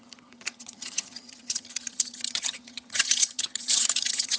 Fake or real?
fake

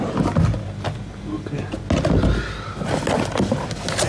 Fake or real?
real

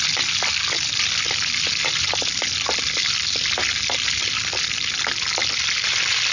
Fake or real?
real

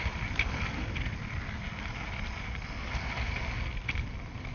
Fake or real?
real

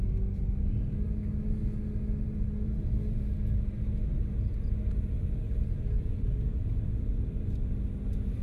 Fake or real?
real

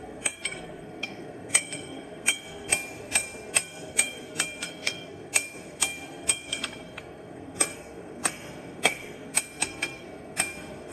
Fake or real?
fake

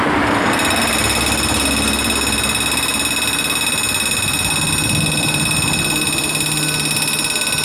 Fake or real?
real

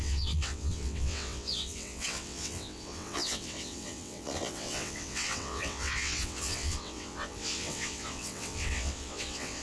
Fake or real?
fake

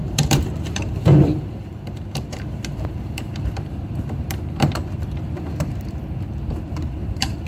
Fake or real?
fake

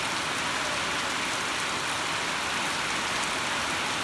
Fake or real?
real